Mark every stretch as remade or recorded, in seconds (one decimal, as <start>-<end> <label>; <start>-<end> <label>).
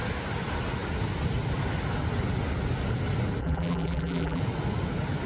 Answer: 0.0-3.4 recorded; 3.4-4.4 remade; 4.4-5.3 recorded